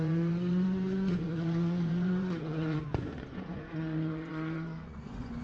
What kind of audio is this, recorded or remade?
remade